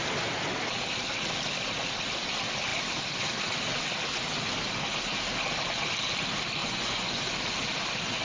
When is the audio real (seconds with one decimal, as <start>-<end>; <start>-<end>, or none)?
0.0-6.6; 7.2-8.2